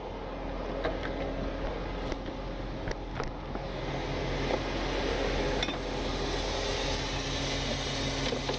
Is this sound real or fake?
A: real